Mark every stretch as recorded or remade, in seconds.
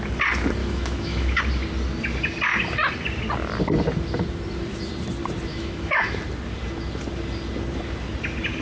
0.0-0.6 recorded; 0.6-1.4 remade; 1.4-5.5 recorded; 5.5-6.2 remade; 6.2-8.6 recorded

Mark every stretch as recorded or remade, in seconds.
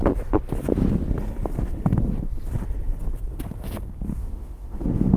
0.0-4.2 recorded; 4.2-5.2 remade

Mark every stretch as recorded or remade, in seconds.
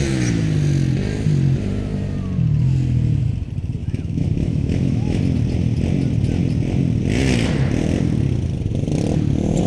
0.0-3.8 recorded; 3.8-5.2 remade; 5.2-9.7 recorded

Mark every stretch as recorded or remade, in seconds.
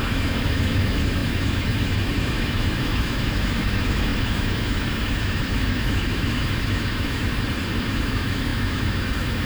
0.0-7.3 remade; 7.3-7.8 recorded; 7.8-9.4 remade